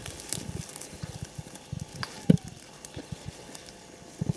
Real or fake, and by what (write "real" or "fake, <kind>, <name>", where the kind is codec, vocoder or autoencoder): real